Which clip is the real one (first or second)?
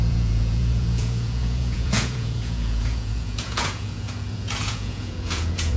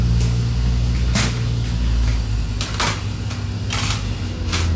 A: second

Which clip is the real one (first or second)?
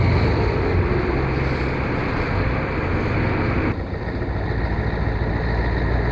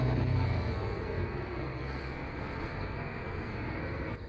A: first